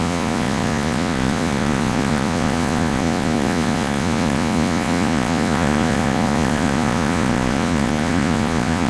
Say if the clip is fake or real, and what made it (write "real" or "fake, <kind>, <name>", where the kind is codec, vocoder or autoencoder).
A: fake, vocoder, Vocos